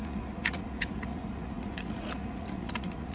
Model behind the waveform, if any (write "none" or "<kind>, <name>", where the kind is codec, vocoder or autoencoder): vocoder, Vocos